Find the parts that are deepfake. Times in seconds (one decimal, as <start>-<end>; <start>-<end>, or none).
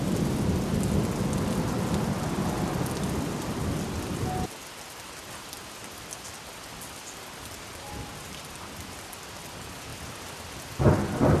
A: none